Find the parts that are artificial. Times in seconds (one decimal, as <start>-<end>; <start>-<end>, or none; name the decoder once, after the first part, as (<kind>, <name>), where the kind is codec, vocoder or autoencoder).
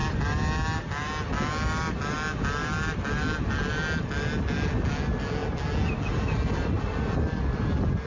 none